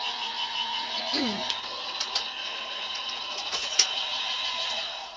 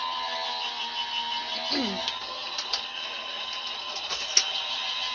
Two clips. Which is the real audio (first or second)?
second